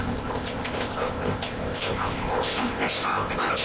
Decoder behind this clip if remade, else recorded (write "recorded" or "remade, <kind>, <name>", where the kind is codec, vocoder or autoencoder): remade, codec, ZipCodec